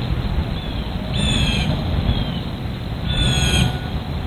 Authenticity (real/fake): real